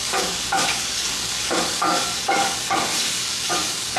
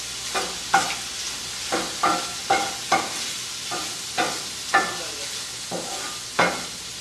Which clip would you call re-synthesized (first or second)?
first